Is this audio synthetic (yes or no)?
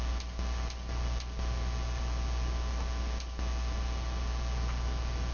no